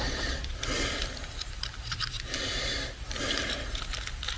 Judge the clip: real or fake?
fake